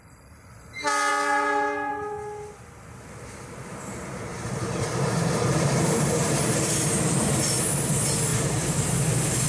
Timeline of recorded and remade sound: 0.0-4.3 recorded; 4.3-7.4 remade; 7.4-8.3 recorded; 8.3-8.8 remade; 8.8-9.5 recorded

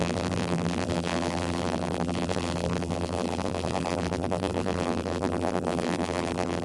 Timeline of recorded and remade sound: 0.0-6.6 remade

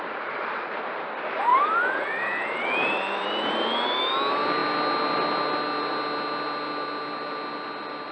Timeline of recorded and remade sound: 0.0-1.5 recorded; 1.5-4.1 remade; 4.1-8.1 recorded